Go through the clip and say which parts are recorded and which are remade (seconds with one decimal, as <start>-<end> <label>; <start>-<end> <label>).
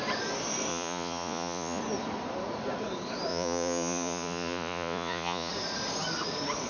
0.0-0.7 recorded; 0.7-1.8 remade; 1.8-3.3 recorded; 3.3-5.5 remade; 5.5-6.7 recorded